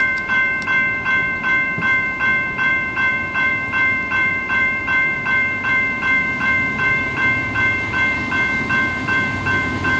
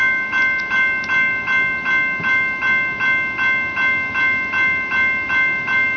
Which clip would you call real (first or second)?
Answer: second